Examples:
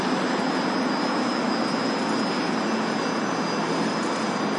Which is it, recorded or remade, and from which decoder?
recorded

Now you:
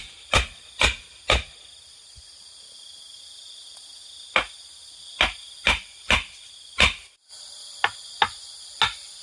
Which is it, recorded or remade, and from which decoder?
recorded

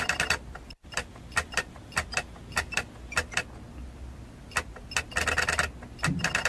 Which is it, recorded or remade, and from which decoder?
recorded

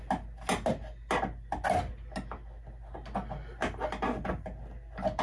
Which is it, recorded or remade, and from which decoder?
recorded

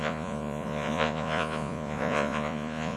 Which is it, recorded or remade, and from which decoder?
remade, vocoder, Vocos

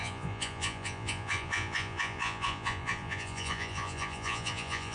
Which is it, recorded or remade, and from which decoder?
remade, vocoder, Vocos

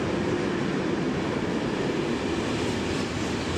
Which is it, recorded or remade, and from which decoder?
recorded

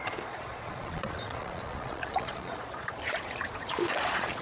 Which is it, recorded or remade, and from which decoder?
remade, vocoder, Vocos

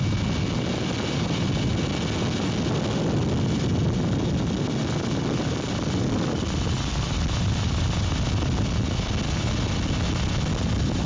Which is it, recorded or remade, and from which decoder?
recorded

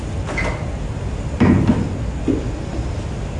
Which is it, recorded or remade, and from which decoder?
recorded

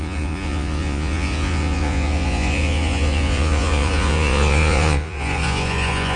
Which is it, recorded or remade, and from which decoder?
remade, vocoder, Vocos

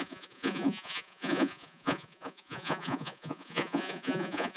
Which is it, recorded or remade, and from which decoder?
remade, vocoder, Vocos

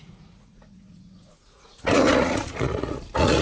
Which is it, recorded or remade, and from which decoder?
remade, vocoder, Vocos